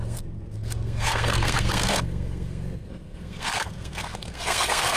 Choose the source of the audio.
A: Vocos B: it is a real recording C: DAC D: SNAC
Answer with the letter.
D